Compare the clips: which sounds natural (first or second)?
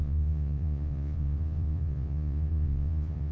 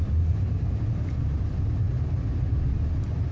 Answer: second